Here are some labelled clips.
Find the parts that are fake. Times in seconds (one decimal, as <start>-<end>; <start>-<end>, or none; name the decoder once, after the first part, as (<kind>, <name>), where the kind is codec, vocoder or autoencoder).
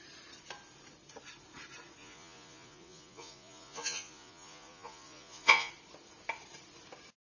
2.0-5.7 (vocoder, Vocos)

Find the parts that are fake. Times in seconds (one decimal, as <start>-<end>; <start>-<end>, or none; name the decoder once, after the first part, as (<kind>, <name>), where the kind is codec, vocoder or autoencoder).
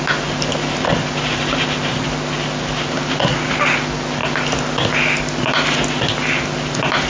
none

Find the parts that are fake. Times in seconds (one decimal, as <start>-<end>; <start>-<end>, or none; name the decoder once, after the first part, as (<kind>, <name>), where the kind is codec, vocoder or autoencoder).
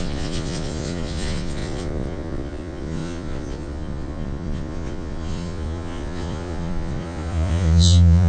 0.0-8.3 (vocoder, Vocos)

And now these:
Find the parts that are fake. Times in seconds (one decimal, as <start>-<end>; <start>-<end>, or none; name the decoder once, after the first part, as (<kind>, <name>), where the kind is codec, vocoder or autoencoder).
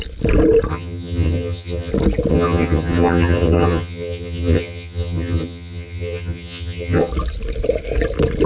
0.7-1.9 (vocoder, HiFi-GAN); 2.3-7.1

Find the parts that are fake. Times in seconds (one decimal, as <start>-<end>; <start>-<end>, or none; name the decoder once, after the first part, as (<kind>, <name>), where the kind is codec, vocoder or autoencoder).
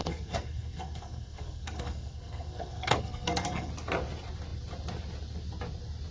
0.0-3.7 (codec, SNAC)